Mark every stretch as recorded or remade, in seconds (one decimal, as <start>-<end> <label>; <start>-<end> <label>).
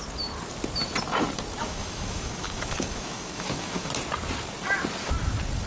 0.0-1.6 recorded; 1.6-3.9 remade; 3.9-5.7 recorded